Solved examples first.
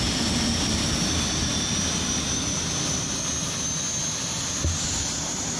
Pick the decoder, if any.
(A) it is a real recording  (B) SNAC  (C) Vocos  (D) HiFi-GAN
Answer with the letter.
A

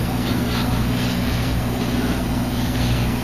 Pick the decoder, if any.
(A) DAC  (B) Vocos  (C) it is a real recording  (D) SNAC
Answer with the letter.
D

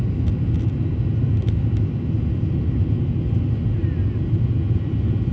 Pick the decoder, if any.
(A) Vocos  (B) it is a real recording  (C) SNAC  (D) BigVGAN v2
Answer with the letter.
B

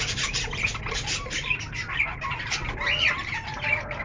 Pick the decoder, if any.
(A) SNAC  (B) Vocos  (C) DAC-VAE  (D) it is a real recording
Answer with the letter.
D